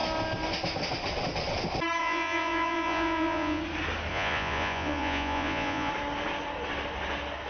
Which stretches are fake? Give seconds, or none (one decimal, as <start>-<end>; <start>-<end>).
2.0-3.6; 4.1-5.9